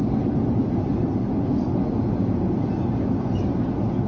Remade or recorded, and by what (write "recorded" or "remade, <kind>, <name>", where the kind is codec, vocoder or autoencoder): recorded